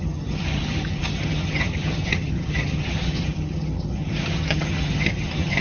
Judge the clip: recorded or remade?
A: remade